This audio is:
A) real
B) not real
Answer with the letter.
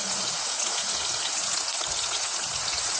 B